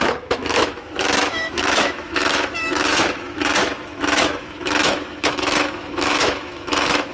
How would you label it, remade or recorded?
remade